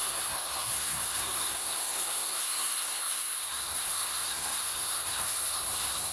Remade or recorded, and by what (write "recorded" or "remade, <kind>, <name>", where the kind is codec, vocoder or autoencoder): remade, codec, SNAC